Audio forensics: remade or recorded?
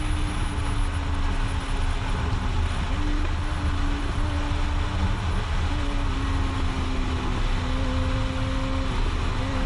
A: recorded